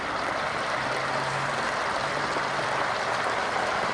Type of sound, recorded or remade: recorded